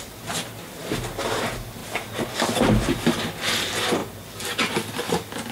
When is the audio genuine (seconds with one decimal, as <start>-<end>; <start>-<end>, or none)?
0.0-5.5